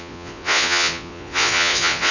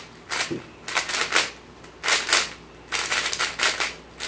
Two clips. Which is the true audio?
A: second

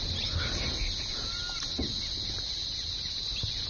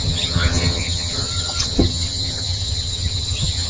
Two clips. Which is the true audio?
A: first